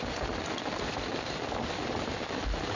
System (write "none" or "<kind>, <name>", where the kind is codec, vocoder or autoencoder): none